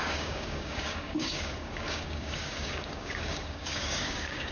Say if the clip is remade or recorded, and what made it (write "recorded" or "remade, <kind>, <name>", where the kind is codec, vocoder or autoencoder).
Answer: remade, codec, DAC